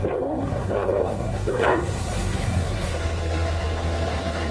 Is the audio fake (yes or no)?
yes